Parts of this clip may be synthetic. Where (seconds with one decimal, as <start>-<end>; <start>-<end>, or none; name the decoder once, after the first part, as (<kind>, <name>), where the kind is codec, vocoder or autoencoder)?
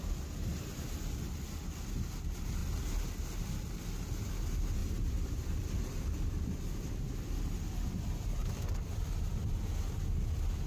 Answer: 4.8-7.1 (vocoder, BigVGAN v2); 8.4-9.6